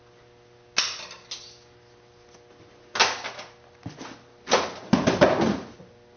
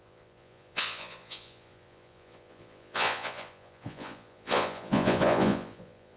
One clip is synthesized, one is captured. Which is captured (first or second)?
first